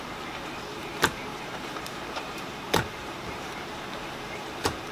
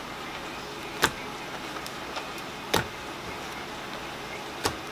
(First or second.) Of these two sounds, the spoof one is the first